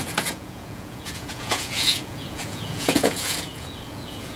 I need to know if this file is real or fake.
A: fake